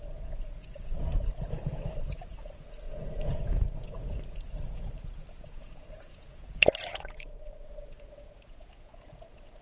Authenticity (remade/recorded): remade